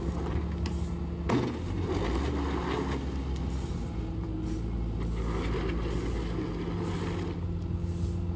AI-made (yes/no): no